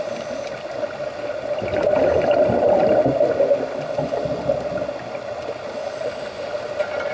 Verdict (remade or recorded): recorded